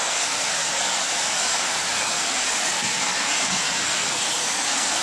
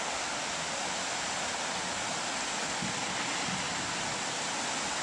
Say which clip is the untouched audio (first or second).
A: second